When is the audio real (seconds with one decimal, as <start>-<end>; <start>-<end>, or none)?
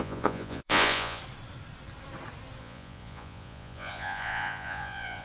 1.2-2.6